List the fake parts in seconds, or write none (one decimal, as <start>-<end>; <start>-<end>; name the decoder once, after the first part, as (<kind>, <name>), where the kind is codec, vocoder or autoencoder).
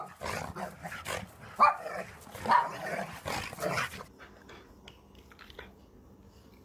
none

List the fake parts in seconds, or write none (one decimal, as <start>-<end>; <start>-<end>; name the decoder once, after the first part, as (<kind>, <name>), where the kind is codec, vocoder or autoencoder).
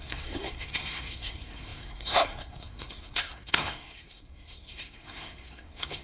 0.0-6.0 (codec, SNAC)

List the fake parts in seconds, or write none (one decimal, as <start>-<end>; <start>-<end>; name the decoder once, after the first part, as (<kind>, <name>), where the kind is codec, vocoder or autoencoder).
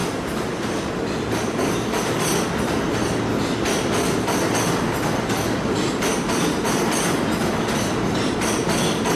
0.0-0.9 (vocoder, BigVGAN v2)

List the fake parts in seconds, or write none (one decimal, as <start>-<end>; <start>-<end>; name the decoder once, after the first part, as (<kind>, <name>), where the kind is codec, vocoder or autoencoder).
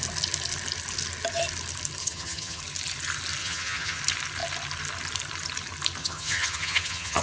2.0-2.6 (vocoder, HiFi-GAN); 3.4-4.0; 6.0-7.2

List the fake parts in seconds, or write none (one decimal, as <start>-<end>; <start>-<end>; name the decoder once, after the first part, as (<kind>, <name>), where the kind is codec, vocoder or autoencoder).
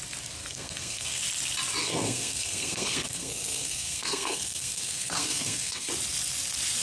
0.4-1.2 (codec, SNAC); 1.8-5.9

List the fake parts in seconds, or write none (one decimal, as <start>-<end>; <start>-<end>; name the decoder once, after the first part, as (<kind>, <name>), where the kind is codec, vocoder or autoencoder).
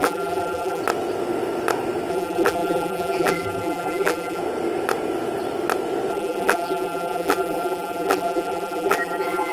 0.0-0.8 (vocoder, BigVGAN v2); 2.1-4.4; 6.1-9.5